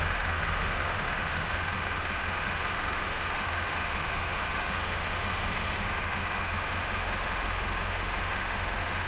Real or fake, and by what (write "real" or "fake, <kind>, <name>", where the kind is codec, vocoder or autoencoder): fake, autoencoder, DAC-VAE